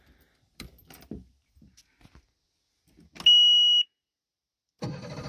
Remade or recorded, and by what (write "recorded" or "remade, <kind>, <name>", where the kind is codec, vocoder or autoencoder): recorded